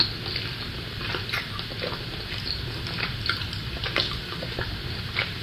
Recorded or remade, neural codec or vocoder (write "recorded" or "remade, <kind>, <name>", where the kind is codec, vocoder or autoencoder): recorded